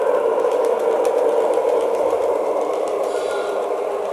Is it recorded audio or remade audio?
recorded